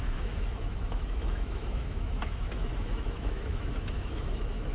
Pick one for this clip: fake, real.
fake